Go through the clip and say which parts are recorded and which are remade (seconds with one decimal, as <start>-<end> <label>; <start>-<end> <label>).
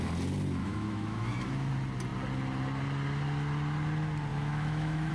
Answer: 0.0-0.6 recorded; 0.6-1.7 remade; 1.7-4.3 recorded; 4.3-5.1 remade